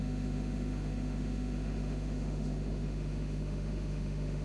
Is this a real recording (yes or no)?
no